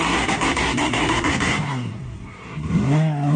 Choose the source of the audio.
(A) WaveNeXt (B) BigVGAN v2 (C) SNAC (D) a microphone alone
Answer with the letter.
C